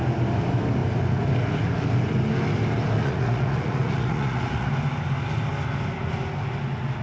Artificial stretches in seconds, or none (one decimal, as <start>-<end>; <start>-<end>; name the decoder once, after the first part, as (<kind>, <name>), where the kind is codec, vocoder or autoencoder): 3.0-4.7 (vocoder, Vocos)